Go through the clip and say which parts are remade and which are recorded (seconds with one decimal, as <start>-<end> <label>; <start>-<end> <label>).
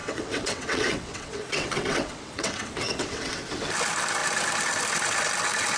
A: 0.0-3.4 remade; 3.4-5.8 recorded